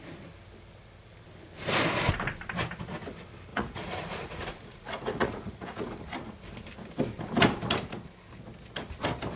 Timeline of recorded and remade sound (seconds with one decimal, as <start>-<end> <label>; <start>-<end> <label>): 0.0-3.5 recorded; 3.5-6.0 remade; 6.0-9.4 recorded